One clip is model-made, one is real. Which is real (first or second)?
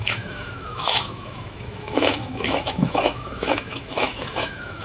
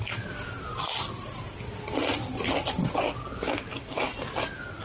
second